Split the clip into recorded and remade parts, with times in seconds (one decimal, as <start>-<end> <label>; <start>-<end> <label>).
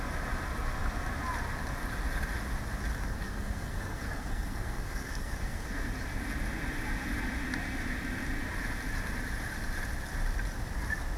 0.0-2.9 recorded; 2.9-5.9 remade; 5.9-11.2 recorded